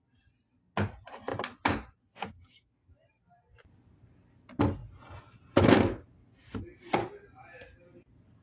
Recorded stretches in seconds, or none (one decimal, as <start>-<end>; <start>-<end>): 0.0-8.4